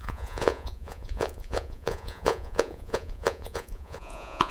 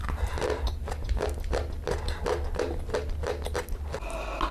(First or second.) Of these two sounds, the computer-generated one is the first